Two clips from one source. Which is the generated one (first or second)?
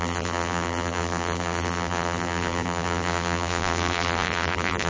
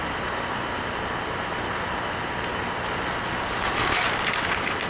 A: first